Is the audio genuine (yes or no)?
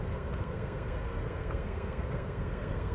no